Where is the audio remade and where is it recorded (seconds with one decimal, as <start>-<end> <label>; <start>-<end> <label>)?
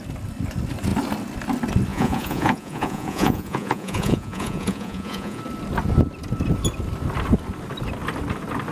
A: 0.0-1.9 recorded; 1.9-5.4 remade; 5.4-8.7 recorded